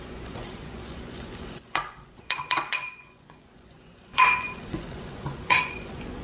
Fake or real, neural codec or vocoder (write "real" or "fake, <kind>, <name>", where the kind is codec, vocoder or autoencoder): fake, vocoder, Vocos